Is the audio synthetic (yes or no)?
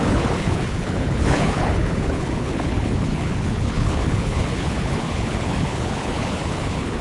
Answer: yes